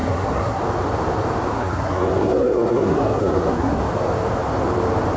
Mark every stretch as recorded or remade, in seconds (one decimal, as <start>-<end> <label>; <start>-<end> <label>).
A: 0.0-0.6 remade; 0.6-1.5 recorded; 1.5-3.8 remade; 3.8-5.2 recorded